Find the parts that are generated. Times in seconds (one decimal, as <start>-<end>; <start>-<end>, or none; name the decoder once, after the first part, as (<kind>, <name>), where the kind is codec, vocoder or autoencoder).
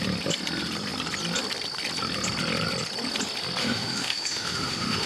3.6-5.1 (autoencoder, DAC-VAE)